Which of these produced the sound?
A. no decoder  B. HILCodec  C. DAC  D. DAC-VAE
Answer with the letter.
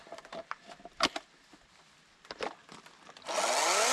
A